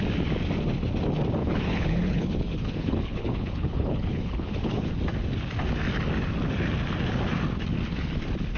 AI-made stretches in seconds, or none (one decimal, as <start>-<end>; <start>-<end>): 1.4-4.9